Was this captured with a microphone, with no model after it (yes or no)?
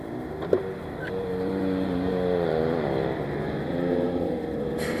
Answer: yes